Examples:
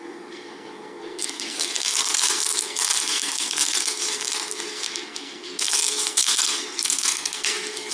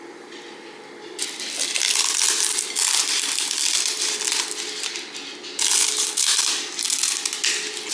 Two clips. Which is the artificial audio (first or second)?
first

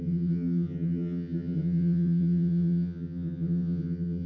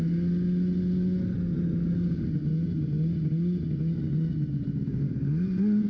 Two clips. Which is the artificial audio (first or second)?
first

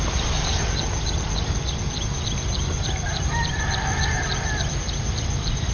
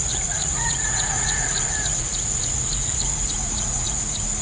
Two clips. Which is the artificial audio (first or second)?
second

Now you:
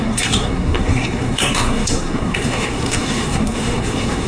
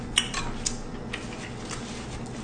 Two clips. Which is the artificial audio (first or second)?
first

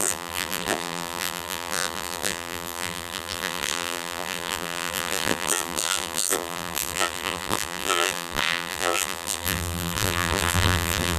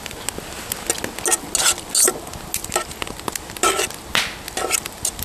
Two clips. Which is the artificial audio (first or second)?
first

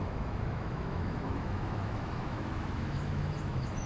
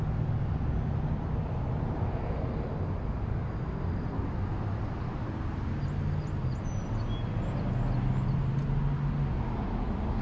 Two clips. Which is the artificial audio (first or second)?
first